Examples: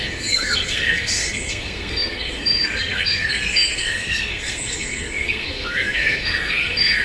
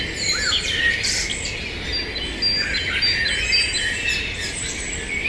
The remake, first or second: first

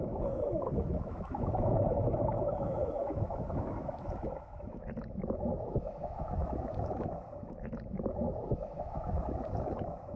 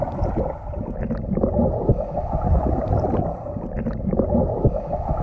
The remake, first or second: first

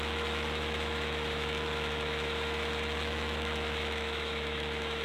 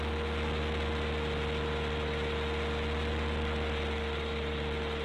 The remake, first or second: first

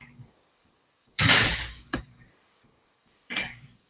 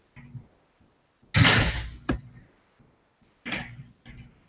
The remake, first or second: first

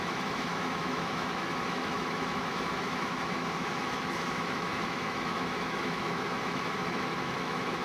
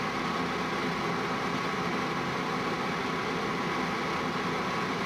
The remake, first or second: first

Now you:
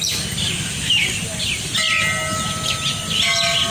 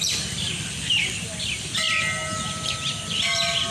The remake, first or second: second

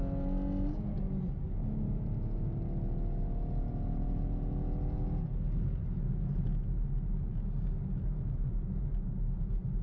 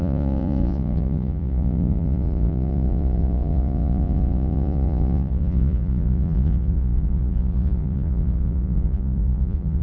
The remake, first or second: second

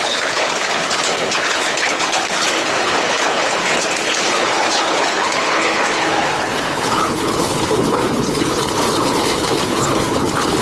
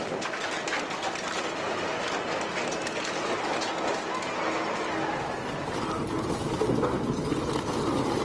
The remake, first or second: first